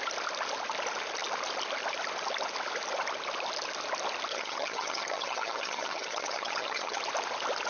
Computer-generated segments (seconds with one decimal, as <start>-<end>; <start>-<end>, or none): 4.3-7.0